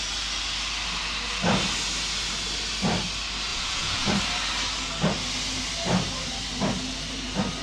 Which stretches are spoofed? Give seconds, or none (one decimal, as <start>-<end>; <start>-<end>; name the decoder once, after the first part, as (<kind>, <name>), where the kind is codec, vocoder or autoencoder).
3.5-4.1 (vocoder, Vocos)